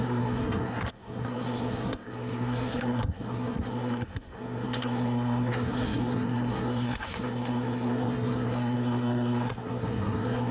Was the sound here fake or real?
fake